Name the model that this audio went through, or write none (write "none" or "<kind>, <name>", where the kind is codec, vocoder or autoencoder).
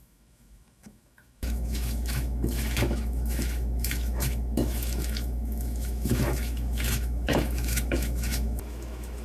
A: autoencoder, DAC-VAE